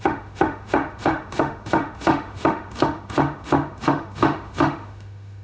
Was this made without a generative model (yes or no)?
no